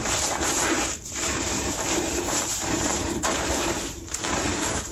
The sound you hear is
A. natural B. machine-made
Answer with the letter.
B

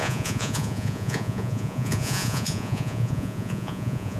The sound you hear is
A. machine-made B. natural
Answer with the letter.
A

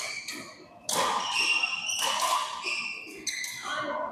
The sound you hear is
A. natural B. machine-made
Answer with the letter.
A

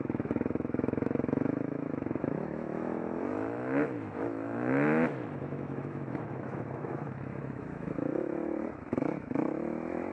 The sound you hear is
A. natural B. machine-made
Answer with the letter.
B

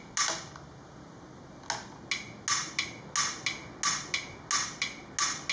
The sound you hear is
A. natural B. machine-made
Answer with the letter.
A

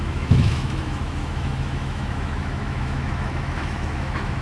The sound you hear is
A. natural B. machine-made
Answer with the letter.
B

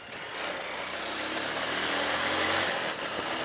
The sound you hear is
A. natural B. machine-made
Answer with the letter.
A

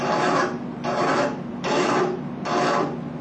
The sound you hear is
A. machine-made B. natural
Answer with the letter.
B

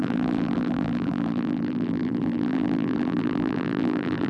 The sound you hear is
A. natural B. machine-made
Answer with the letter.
B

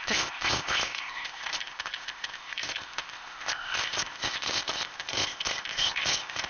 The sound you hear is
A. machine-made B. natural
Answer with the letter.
A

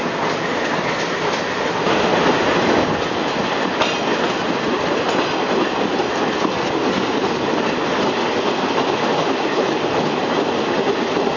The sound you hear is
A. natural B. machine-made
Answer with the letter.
A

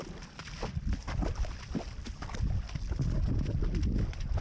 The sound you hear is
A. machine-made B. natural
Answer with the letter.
B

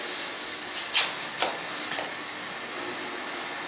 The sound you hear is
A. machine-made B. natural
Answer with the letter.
B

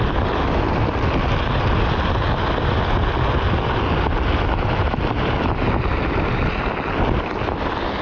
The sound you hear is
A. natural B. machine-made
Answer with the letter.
A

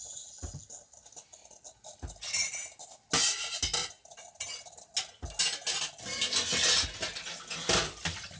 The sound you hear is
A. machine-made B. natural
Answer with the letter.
B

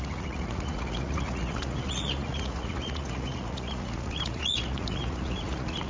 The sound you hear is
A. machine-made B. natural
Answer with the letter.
A